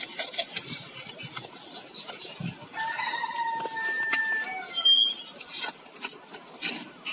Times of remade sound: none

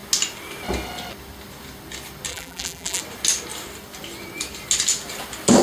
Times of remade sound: 2.3-3.0 (vocoder, BigVGAN v2)

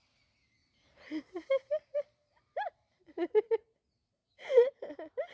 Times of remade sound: 0.6-3.4 (vocoder, BigVGAN v2); 4.2-5.3

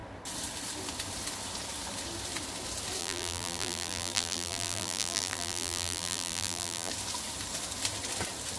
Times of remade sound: 3.0-6.9 (vocoder, BigVGAN v2)

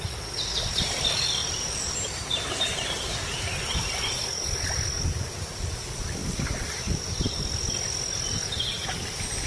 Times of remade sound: 1.4-3.4 (vocoder, BigVGAN v2)